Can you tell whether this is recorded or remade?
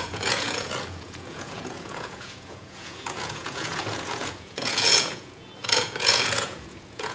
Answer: remade